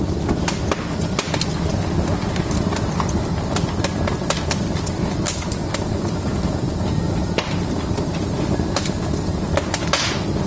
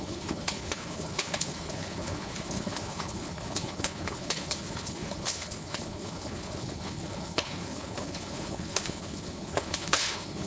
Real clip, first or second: first